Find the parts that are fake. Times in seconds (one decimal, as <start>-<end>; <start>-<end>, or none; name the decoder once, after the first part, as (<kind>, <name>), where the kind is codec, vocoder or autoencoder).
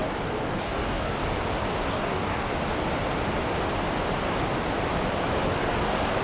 0.6-1.2 (codec, DAC); 1.9-2.5; 5.7-6.2